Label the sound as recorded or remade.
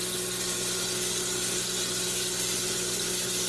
recorded